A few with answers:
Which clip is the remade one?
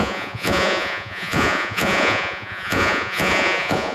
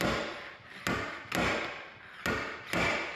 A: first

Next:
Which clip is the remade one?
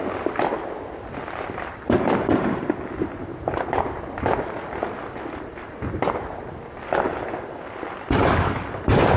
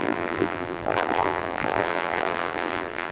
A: second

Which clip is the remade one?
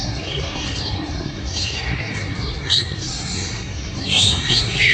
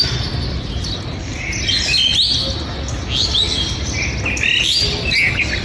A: first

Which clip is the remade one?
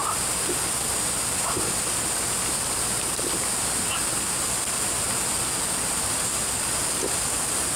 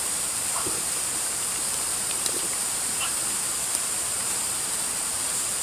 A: second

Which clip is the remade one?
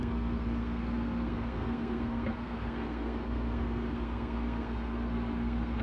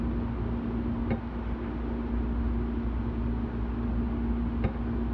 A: first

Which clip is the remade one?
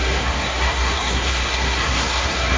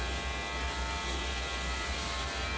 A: first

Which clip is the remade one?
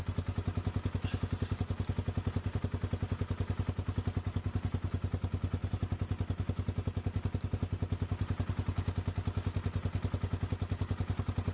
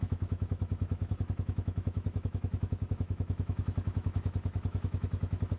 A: second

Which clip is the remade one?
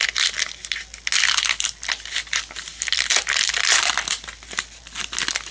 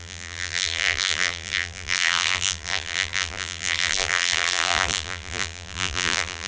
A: second